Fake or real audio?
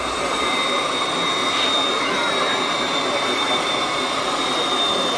real